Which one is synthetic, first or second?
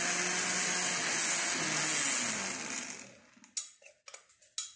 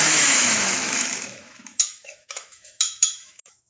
second